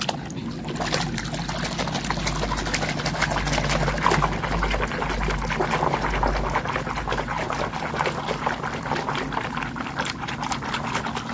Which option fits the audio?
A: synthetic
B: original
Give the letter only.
B